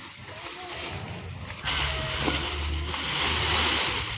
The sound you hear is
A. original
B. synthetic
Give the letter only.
A